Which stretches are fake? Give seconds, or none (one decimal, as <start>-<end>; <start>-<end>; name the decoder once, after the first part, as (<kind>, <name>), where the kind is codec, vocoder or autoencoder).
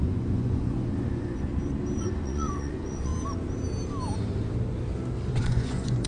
0.0-1.5 (vocoder, Vocos); 2.0-3.1; 5.4-6.1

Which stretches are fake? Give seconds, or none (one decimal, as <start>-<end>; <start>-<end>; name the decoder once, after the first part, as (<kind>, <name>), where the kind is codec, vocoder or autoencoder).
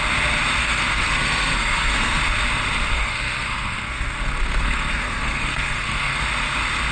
0.6-2.2 (codec, SNAC); 2.9-6.2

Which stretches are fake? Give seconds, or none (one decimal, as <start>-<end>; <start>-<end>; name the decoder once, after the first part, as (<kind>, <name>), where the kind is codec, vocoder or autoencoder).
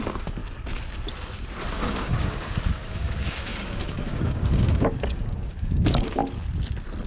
0.0-0.4 (codec, DAC); 1.7-6.2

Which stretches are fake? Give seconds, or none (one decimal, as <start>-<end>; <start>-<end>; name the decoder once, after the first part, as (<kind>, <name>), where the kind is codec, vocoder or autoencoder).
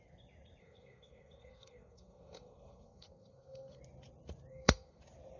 0.6-3.8 (codec, SNAC); 4.5-5.0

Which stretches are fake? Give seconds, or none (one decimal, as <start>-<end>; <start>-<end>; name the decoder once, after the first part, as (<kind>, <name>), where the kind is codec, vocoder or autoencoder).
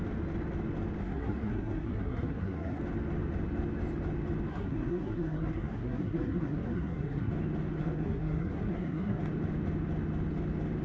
1.0-2.8 (codec, SNAC); 4.5-7.3; 7.8-9.2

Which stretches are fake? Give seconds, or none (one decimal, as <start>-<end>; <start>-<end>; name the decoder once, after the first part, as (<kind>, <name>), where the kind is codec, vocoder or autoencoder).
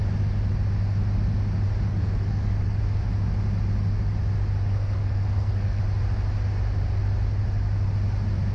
1.9-2.8 (codec, SNAC); 4.7-5.8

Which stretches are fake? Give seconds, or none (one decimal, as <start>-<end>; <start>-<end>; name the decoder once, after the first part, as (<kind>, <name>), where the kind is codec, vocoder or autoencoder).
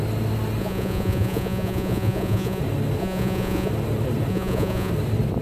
0.6-2.6 (vocoder, Vocos); 3.0-3.7; 4.3-4.9